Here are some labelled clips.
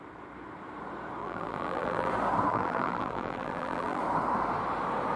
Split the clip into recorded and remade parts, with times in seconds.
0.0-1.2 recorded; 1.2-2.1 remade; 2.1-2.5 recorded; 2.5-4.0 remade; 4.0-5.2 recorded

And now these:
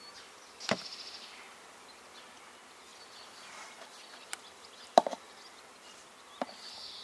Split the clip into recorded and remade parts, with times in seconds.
0.0-2.9 recorded; 2.9-5.2 remade; 5.2-7.0 recorded